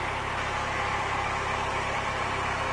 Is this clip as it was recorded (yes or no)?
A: no